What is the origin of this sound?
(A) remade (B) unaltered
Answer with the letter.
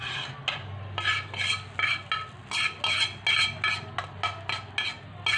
B